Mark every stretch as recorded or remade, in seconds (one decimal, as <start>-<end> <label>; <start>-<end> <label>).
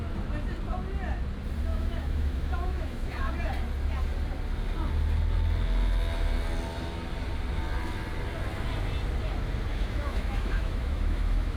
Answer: 0.0-1.7 recorded; 1.7-3.3 remade; 3.3-9.7 recorded; 9.7-11.6 remade